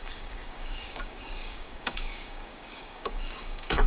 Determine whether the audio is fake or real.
fake